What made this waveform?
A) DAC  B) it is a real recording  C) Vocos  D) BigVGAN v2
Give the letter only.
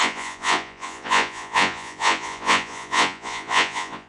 C